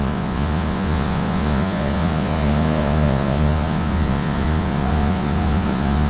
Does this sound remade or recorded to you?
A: remade